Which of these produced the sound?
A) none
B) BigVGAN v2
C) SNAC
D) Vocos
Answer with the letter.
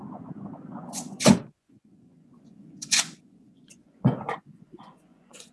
D